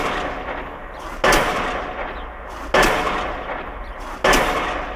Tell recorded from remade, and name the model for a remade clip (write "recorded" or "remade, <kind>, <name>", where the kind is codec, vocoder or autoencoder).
recorded